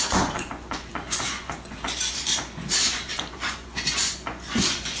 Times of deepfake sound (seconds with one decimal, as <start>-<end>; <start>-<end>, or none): 0.0-5.0